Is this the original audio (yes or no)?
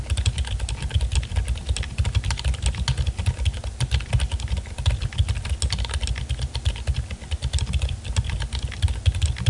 yes